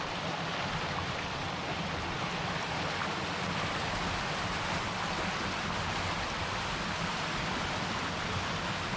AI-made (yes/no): no